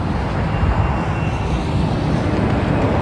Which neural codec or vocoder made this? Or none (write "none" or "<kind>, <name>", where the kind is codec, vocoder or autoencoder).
none